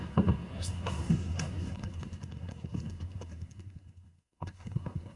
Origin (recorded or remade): remade